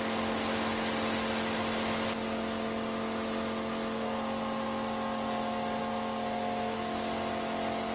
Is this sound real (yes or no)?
yes